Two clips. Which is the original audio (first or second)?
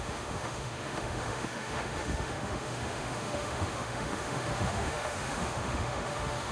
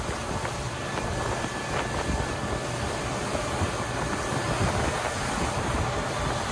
second